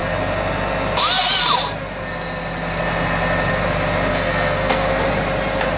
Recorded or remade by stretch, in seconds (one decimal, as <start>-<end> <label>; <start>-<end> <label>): 0.0-4.1 recorded; 4.1-4.9 remade; 4.9-5.8 recorded

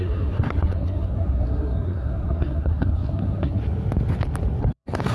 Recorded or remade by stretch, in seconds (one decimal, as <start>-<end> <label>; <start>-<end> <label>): 0.0-3.6 remade; 3.6-4.6 recorded; 4.6-5.1 remade

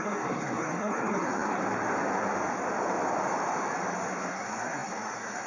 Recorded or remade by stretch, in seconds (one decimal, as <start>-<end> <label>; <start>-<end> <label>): 0.0-1.6 remade; 1.6-4.3 recorded; 4.3-5.5 remade

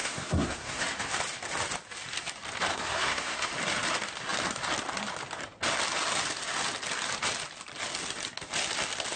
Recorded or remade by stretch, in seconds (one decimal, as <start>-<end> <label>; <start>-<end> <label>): 0.0-0.8 remade; 0.8-2.7 recorded; 2.7-3.5 remade; 3.5-9.2 recorded

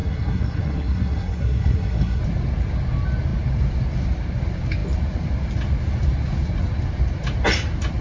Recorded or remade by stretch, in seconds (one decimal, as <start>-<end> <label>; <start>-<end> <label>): 0.0-2.2 remade; 2.2-8.0 recorded